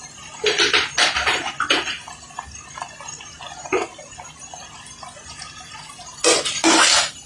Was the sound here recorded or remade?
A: recorded